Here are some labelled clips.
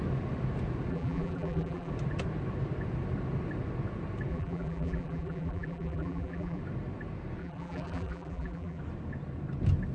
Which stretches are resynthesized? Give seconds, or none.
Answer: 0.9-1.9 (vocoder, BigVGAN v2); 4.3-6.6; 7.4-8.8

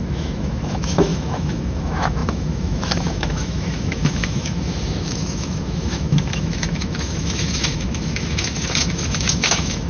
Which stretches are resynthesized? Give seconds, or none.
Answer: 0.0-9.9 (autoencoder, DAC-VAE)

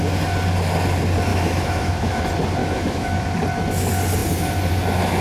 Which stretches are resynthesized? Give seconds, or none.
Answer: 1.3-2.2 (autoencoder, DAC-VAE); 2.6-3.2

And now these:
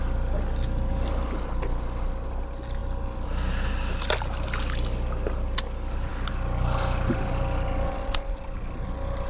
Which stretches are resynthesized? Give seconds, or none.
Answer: none

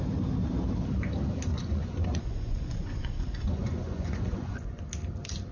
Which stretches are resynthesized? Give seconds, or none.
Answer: 1.5-4.8 (vocoder, Vocos)

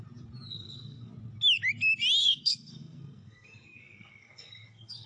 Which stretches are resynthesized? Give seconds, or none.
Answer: 0.5-1.1 (codec, SNAC); 2.2-5.1

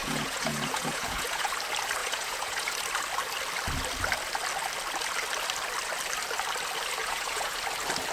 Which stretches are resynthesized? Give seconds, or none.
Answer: 0.0-1.5 (vocoder, Vocos); 2.0-2.7; 7.0-7.6

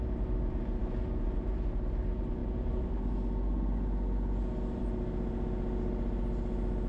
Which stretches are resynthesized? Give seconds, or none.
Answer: none